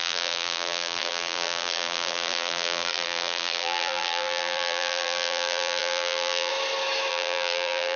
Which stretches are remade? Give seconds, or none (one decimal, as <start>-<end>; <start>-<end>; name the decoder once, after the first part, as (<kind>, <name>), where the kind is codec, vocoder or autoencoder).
0.0-6.5 (vocoder, BigVGAN v2); 7.1-8.0